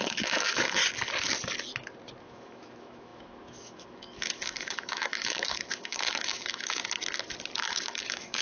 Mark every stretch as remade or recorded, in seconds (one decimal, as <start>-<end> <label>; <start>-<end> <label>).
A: 0.0-0.8 remade; 0.8-2.2 recorded; 2.2-6.8 remade; 6.8-7.6 recorded; 7.6-8.4 remade